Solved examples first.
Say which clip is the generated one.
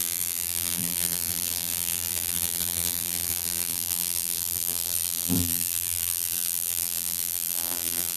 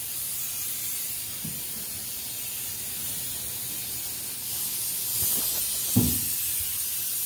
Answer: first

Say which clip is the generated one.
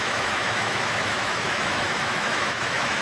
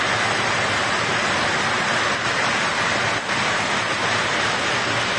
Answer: first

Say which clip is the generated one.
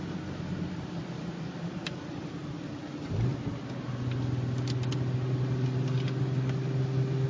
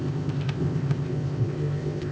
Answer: second